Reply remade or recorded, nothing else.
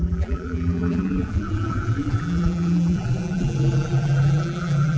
remade